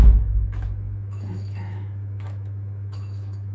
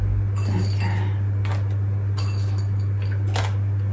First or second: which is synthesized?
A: first